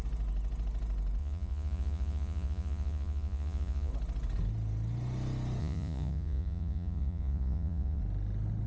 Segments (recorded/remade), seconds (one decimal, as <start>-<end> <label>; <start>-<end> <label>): 0.0-1.2 recorded; 1.2-3.9 remade; 3.9-5.6 recorded; 5.6-8.0 remade; 8.0-8.7 recorded